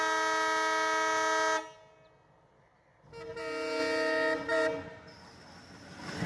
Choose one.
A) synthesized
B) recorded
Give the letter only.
B